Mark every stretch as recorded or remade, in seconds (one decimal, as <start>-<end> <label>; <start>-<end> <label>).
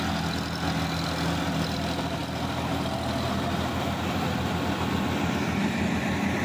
0.0-6.4 recorded